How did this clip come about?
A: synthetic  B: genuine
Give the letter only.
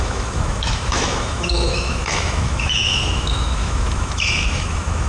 A